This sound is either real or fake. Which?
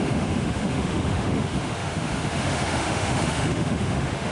fake